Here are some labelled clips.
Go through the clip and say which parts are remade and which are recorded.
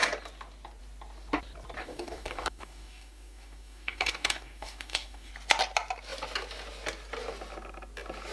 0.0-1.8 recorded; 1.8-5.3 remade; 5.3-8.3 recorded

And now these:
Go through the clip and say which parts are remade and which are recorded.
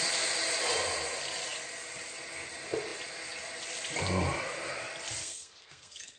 0.0-5.2 recorded; 5.2-6.2 remade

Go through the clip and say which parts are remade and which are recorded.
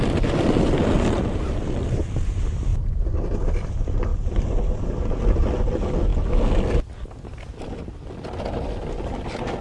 0.0-9.6 recorded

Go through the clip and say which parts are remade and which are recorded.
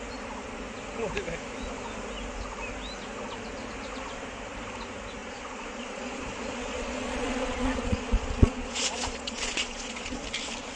0.0-5.2 recorded; 5.2-10.2 remade; 10.2-10.8 recorded